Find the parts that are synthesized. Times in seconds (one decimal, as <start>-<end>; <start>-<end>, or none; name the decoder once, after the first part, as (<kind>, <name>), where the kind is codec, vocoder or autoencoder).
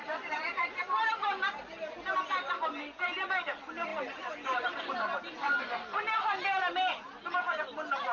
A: 0.0-1.3 (vocoder, BigVGAN v2); 3.9-5.6